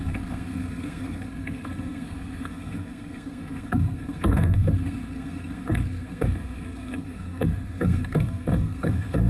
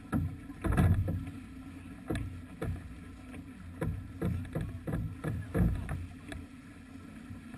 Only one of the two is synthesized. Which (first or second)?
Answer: first